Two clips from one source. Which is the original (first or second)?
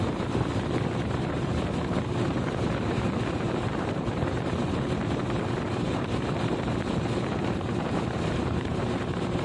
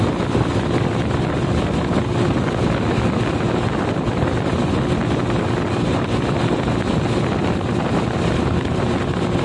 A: second